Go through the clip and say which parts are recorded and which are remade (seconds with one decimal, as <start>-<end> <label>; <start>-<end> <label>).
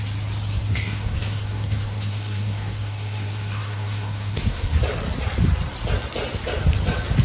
0.0-0.5 recorded; 0.5-4.8 remade; 4.8-7.2 recorded